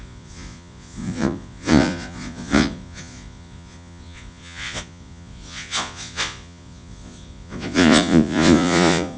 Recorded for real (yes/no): no